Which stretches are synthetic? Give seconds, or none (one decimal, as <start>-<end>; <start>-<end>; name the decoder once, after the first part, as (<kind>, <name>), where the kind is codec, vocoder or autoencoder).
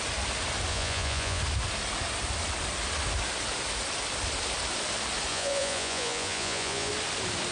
0.7-1.4 (vocoder, Vocos); 5.3-6.9